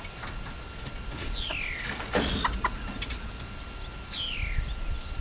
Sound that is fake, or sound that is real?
real